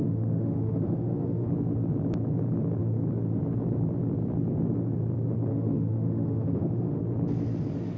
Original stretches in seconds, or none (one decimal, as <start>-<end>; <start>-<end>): 1.5-5.5; 7.0-8.0

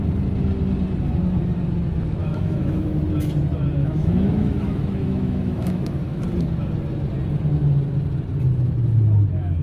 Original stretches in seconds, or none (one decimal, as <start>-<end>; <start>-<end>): 0.0-2.2; 3.0-3.8; 6.2-9.6

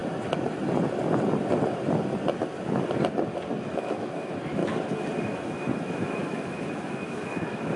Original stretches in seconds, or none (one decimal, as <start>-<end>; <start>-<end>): 0.0-3.7; 4.6-5.2